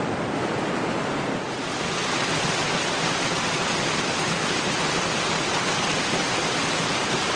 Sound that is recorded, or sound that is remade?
recorded